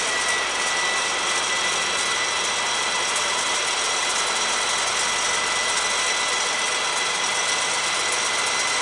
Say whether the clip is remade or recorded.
recorded